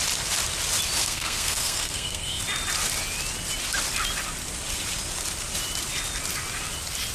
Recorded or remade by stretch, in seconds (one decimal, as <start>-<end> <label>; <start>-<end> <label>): 0.0-1.0 recorded; 1.0-2.4 remade; 2.4-7.1 recorded